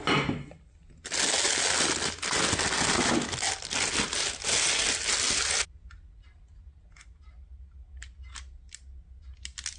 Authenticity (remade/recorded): recorded